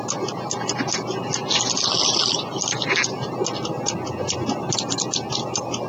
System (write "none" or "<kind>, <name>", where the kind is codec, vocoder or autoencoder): none